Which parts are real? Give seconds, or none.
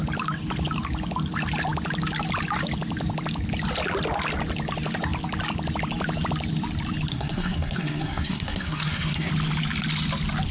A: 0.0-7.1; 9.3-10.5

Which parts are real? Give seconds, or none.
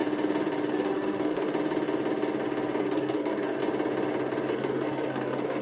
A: 0.0-0.7; 1.5-2.8; 3.6-4.5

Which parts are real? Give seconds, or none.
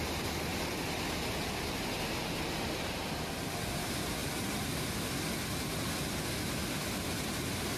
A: 0.0-7.8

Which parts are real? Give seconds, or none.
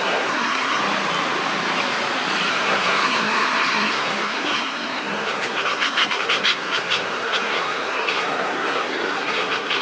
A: 0.8-2.5